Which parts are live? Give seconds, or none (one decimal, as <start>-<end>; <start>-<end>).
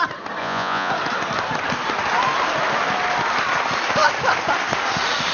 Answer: 0.0-0.4; 0.9-5.3